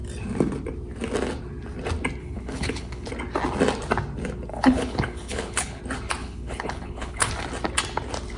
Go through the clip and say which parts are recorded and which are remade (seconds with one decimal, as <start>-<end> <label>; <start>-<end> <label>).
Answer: 0.0-2.2 recorded; 2.2-3.1 remade; 3.1-4.5 recorded; 4.5-5.8 remade; 5.8-6.2 recorded; 6.2-7.3 remade; 7.3-8.4 recorded